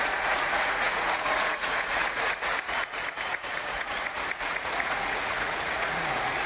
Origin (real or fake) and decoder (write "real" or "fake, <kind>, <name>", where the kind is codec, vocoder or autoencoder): fake, vocoder, Vocos